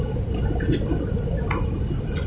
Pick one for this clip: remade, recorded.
recorded